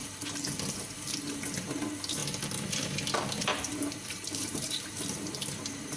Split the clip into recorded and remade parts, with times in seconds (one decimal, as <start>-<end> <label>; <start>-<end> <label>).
0.0-1.2 remade; 1.2-3.4 recorded; 3.4-5.3 remade; 5.3-6.0 recorded